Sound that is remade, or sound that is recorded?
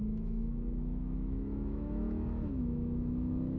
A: remade